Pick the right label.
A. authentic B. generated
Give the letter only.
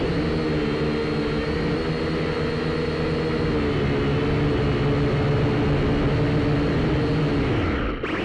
A